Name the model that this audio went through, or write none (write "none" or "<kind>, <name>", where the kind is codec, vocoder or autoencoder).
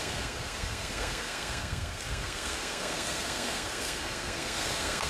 codec, SNAC